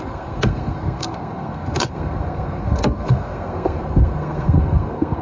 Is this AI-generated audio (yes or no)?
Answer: yes